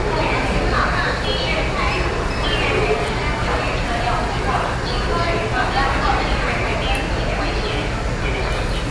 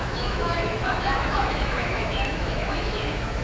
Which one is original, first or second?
first